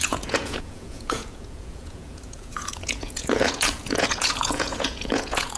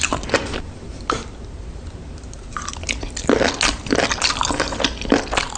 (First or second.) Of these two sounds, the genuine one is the second